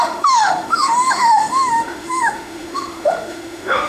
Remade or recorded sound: remade